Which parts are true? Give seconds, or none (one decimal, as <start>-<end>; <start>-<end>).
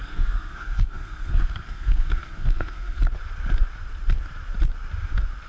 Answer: 3.0-5.5